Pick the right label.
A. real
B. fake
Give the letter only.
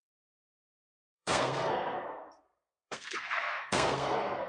B